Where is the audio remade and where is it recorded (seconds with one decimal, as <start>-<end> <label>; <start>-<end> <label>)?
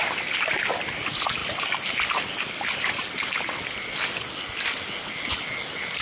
0.0-6.0 recorded